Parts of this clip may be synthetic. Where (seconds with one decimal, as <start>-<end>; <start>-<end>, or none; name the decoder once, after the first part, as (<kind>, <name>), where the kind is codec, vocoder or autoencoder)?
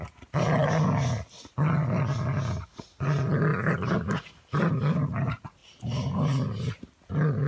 3.5-4.7 (vocoder, BigVGAN v2)